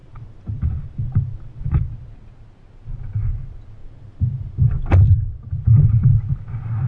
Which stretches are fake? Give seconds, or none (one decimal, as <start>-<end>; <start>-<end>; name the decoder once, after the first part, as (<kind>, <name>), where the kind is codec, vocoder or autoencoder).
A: 0.0-1.8 (vocoder, BigVGAN v2); 3.8-5.9